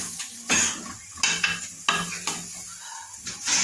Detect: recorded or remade recorded